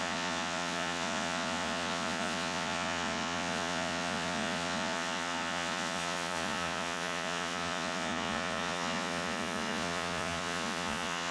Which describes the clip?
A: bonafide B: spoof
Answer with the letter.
B